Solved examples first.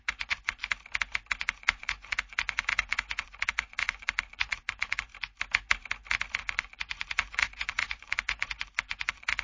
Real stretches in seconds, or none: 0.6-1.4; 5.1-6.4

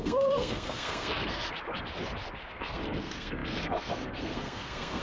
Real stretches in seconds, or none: 1.5-2.5

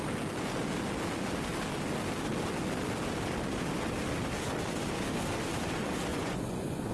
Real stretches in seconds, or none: 0.0-6.1

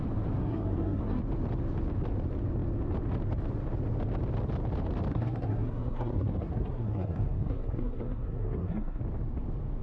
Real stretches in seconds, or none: 0.0-0.4; 1.2-5.1; 9.0-9.8

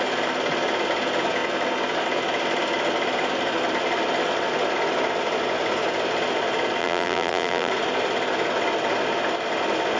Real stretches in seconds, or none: 0.0-6.8; 7.7-10.0

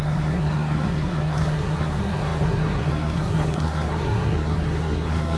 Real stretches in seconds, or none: none

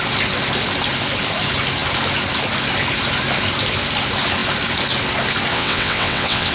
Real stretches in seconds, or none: 0.0-5.5

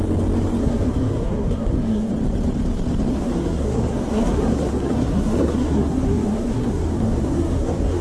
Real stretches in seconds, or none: 0.0-0.6; 2.1-3.1